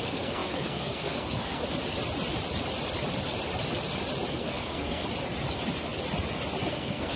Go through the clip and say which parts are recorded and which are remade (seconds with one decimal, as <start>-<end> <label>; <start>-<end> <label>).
0.0-1.6 remade; 1.6-4.3 recorded; 4.3-5.0 remade; 5.0-6.7 recorded; 6.7-7.2 remade